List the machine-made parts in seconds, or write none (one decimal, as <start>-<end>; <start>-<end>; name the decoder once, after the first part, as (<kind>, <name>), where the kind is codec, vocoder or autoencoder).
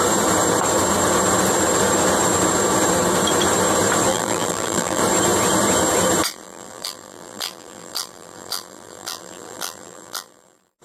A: 4.1-5.0 (vocoder, BigVGAN v2); 6.3-10.8